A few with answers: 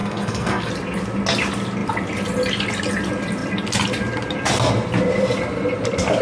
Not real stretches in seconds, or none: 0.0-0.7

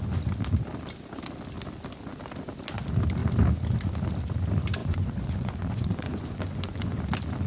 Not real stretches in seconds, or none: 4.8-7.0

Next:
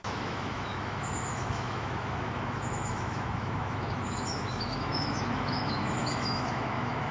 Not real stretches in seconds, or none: 0.0-7.1